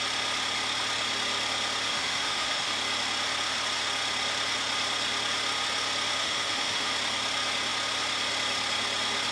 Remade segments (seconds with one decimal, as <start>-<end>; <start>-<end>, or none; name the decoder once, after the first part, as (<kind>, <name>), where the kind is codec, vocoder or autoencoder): 1.9-2.7 (autoencoder, DAC-VAE); 6.2-6.9

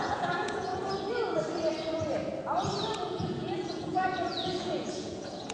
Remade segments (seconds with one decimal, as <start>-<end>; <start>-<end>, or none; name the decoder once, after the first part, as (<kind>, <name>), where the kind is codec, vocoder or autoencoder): 0.0-0.7 (vocoder, Vocos); 3.0-5.5

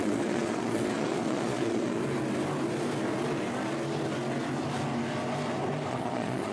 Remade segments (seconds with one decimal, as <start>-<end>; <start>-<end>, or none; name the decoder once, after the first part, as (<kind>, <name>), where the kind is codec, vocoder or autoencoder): 0.0-2.0 (vocoder, Vocos); 5.9-6.5

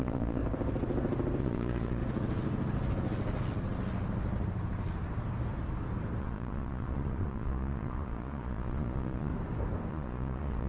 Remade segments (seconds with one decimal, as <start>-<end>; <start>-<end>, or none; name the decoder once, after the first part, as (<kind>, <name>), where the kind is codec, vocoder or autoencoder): 0.0-0.4 (vocoder, Vocos); 1.4-2.0; 6.2-9.3; 9.9-10.7

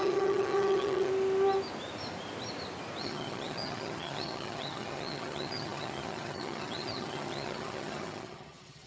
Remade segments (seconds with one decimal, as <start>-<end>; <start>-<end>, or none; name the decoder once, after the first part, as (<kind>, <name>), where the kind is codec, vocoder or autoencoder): 0.0-1.1 (vocoder, HiFi-GAN); 3.0-8.9

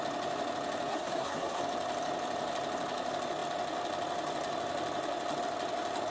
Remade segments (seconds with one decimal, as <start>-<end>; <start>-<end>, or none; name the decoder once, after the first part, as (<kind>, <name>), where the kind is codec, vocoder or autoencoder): 0.9-1.6 (codec, SNAC)